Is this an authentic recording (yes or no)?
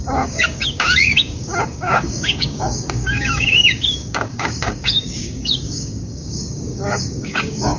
no